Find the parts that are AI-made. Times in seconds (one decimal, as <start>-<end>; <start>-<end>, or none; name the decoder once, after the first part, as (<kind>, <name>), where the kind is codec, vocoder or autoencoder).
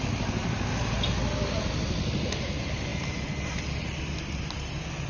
none